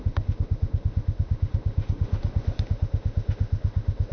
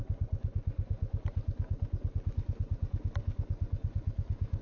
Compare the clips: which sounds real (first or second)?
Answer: second